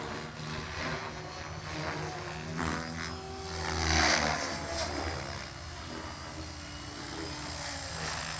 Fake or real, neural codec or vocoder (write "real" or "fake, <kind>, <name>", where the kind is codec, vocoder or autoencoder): real